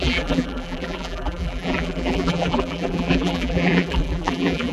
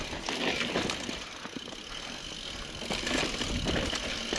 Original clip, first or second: second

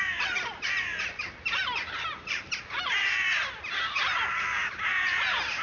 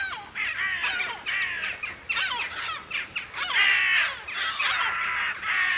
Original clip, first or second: second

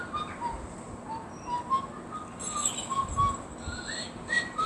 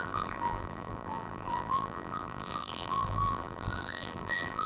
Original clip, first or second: first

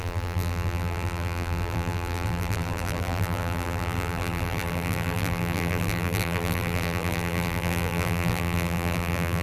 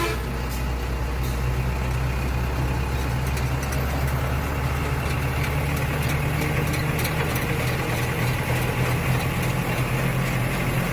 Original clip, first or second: second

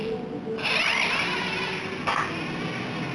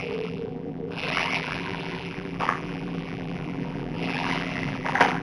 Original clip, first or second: first